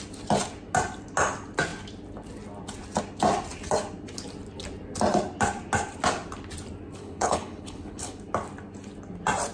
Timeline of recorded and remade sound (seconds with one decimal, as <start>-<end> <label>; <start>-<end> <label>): 0.0-7.0 recorded; 7.0-8.2 remade; 8.2-9.5 recorded

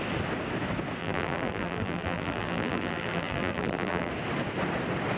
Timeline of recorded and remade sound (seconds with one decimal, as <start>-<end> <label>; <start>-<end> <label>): 0.0-1.0 recorded; 1.0-4.1 remade; 4.1-5.2 recorded